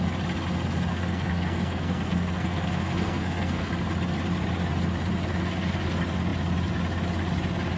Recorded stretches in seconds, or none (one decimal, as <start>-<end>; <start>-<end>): 0.0-0.9; 3.7-7.8